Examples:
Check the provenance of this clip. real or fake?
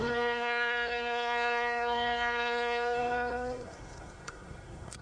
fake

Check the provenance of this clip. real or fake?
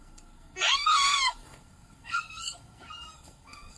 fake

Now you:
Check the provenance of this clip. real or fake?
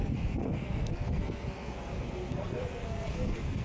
fake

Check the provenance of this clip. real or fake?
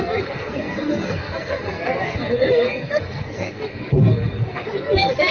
fake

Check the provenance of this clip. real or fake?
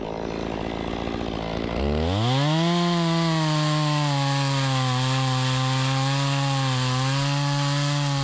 real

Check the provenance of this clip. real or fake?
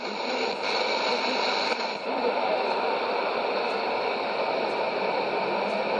real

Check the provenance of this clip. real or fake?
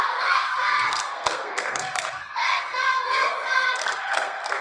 fake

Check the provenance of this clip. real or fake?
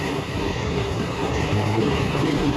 fake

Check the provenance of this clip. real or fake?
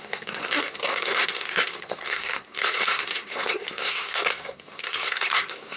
fake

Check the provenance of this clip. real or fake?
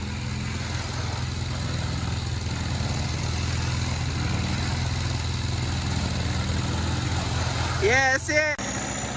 real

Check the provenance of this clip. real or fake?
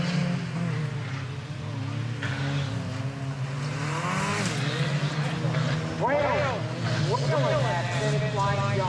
real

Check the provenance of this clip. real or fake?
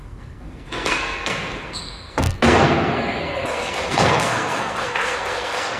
fake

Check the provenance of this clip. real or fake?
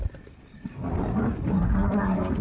real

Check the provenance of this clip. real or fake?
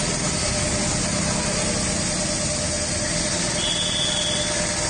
real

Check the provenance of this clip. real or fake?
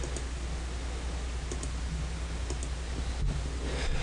real